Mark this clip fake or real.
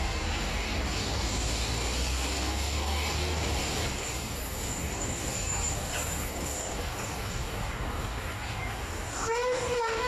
fake